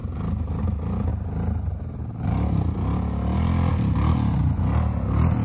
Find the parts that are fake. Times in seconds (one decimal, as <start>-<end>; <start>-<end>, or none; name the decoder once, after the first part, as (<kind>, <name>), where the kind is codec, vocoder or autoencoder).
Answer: none